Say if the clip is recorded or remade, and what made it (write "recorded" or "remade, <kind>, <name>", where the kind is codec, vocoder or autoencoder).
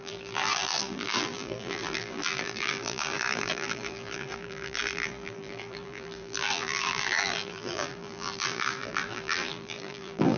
remade, vocoder, BigVGAN v2